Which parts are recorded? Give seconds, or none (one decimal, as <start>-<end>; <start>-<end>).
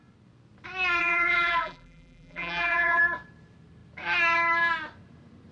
0.0-1.0; 3.0-5.5